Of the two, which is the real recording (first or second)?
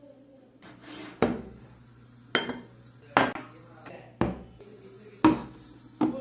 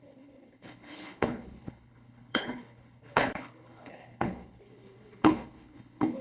first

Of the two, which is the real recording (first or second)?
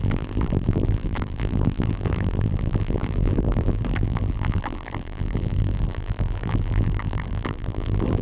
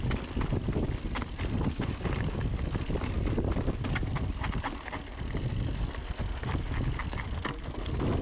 second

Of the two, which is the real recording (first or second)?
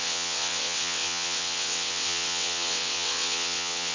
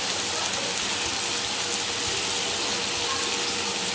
second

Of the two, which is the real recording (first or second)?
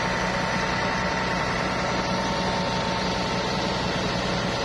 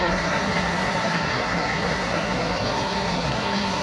first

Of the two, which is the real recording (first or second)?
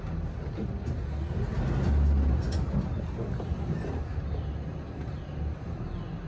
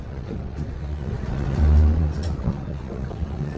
first